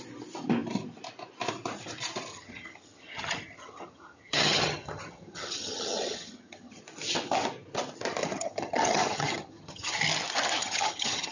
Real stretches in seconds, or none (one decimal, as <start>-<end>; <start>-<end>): 0.0-2.3; 6.8-8.2; 10.0-10.6